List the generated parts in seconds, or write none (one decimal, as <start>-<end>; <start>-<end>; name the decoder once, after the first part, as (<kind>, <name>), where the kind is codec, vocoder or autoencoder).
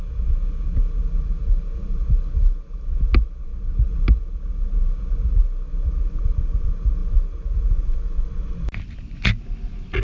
none